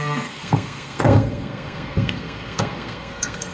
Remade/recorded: remade